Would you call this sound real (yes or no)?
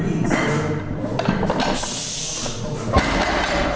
yes